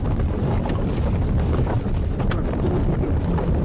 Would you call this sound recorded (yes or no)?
no